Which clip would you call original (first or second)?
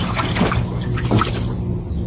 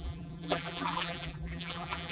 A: first